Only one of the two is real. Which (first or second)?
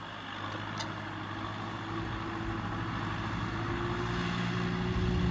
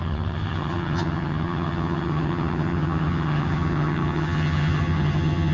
first